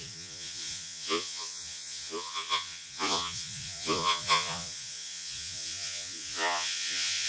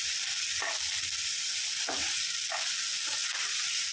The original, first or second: second